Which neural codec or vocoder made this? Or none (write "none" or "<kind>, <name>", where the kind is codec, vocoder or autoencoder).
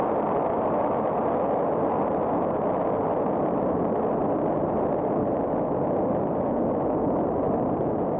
none